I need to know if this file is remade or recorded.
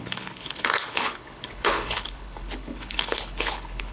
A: remade